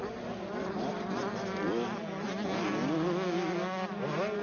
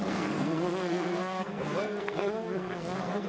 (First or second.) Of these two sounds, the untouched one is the first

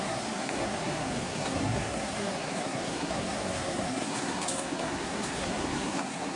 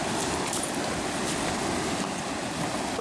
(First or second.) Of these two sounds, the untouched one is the second